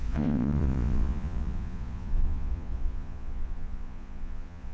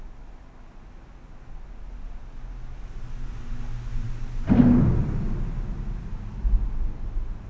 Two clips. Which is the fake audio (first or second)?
first